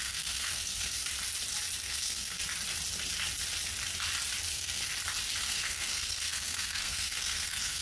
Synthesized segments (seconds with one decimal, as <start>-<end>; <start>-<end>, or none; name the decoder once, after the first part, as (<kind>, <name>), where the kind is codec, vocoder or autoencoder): 0.0-1.0 (codec, SNAC); 1.8-2.4; 4.5-4.9; 5.4-7.8